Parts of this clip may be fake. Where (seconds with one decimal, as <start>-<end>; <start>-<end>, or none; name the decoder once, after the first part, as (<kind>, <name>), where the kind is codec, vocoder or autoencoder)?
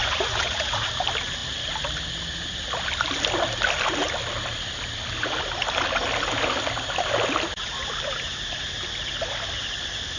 0.0-0.9 (vocoder, Vocos)